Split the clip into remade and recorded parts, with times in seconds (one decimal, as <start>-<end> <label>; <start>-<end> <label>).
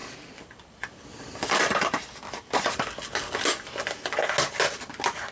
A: 0.0-2.8 remade; 2.8-5.3 recorded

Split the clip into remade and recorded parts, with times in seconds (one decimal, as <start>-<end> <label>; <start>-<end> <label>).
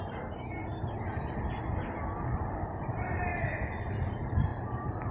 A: 0.0-0.6 remade; 0.6-2.5 recorded; 2.5-3.3 remade; 3.3-4.1 recorded; 4.1-4.5 remade; 4.5-5.1 recorded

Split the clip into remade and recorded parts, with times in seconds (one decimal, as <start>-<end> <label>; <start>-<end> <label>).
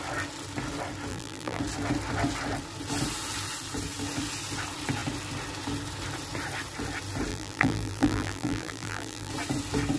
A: 0.0-1.1 recorded; 1.1-1.6 remade; 1.6-7.3 recorded; 7.3-9.3 remade; 9.3-10.0 recorded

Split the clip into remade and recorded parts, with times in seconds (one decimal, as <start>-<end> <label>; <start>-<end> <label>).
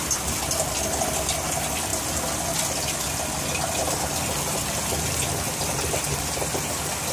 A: 0.0-7.1 recorded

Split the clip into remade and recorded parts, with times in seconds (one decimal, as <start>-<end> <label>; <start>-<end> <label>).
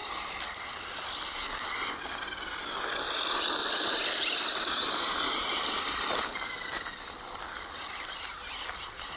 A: 0.0-1.5 remade; 1.5-3.6 recorded; 3.6-4.4 remade; 4.4-9.2 recorded